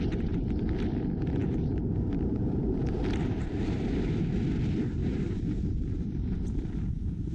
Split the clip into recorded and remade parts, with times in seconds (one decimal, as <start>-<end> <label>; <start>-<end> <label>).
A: 0.0-1.4 recorded; 1.4-4.2 remade; 4.2-5.0 recorded; 5.0-6.7 remade; 6.7-7.3 recorded